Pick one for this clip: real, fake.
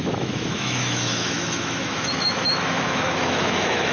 fake